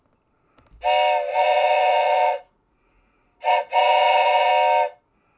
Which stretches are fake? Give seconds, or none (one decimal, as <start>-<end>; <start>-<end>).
1.3-4.5